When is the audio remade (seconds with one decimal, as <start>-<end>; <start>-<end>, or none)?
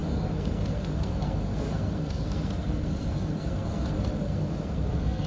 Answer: 0.0-5.3